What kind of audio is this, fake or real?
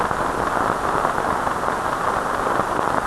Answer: real